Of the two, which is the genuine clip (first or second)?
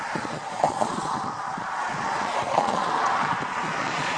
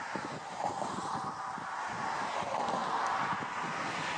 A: second